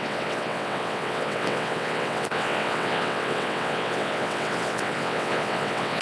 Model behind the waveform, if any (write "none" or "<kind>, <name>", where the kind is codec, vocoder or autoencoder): vocoder, WaveNeXt